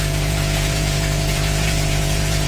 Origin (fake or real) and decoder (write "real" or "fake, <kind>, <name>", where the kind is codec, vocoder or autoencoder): fake, vocoder, Vocos